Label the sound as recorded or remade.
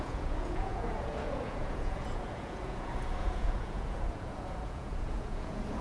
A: remade